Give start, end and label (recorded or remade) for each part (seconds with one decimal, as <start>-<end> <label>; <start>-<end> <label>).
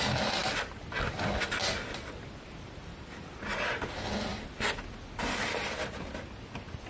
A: 0.0-6.9 recorded